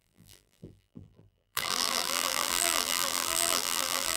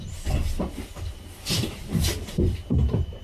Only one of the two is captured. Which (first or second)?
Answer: second